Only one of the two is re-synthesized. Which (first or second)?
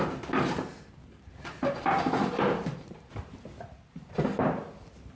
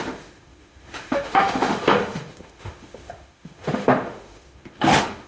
second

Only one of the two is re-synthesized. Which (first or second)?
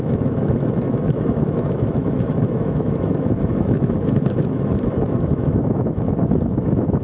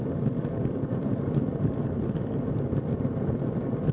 first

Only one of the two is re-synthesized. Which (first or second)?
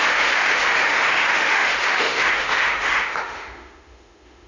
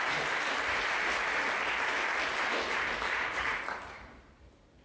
first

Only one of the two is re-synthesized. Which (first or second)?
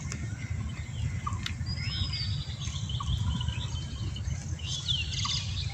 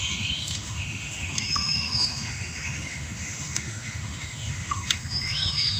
second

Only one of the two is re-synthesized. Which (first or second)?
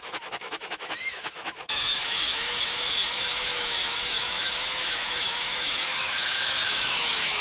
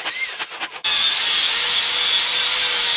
first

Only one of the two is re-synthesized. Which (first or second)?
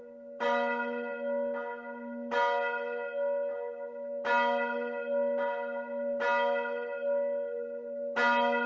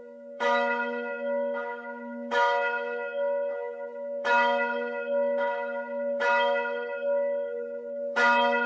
second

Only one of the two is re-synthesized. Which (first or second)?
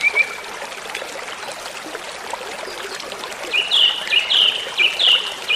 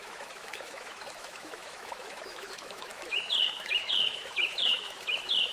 second